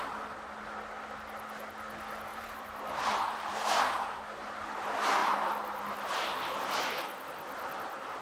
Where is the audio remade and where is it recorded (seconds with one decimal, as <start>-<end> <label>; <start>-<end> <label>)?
0.0-2.3 recorded; 2.3-4.1 remade; 4.1-5.2 recorded; 5.2-6.9 remade; 6.9-8.2 recorded